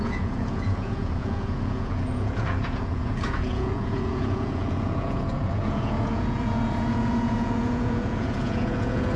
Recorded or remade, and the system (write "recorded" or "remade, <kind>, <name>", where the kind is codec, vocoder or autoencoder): remade, vocoder, Vocos